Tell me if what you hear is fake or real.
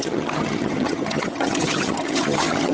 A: fake